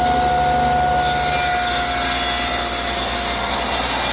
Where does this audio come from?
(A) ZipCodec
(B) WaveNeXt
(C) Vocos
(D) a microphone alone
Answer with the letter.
D